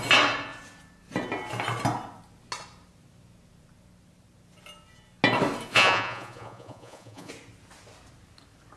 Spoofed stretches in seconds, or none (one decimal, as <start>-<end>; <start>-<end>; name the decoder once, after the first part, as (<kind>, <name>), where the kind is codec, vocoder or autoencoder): 5.7-7.3 (vocoder, Vocos)